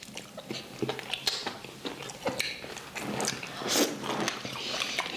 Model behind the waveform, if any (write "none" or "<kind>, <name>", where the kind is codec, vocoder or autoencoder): none